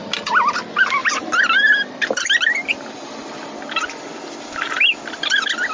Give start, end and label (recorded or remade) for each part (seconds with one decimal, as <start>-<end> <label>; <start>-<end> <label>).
0.0-5.7 recorded